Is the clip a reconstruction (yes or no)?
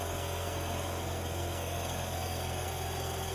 yes